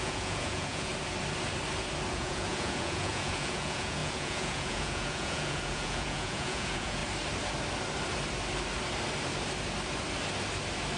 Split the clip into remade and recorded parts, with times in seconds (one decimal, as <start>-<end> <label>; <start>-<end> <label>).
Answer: 0.0-0.9 remade; 0.9-2.1 recorded; 2.1-7.0 remade; 7.0-11.0 recorded